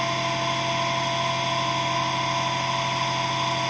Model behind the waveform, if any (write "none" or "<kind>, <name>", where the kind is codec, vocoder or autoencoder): none